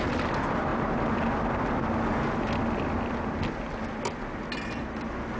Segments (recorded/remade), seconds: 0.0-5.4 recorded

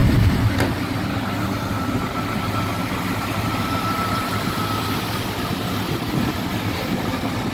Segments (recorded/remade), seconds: 0.0-7.5 recorded

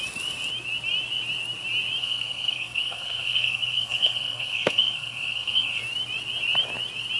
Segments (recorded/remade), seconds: 0.0-2.0 recorded; 2.0-5.8 remade; 5.8-7.2 recorded

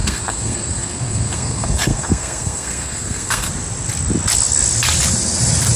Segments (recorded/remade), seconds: 0.0-3.5 remade; 3.5-5.8 recorded

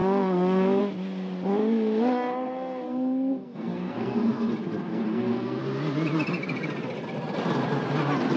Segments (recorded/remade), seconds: 0.0-0.8 remade; 0.8-1.6 recorded; 1.6-4.5 remade; 4.5-4.9 recorded; 4.9-5.6 remade; 5.6-8.4 recorded

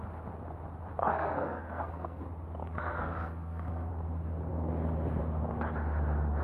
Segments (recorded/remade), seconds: 0.0-1.1 recorded; 1.1-2.2 remade; 2.2-2.6 recorded; 2.6-3.9 remade; 3.9-6.4 recorded

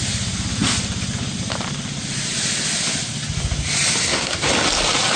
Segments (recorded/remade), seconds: 0.0-4.0 recorded; 4.0-4.5 remade; 4.5-5.2 recorded

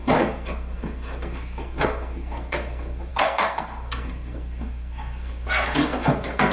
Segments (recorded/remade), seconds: 0.0-6.5 remade